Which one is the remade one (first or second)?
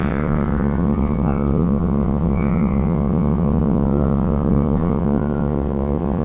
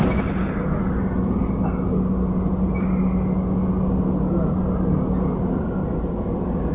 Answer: first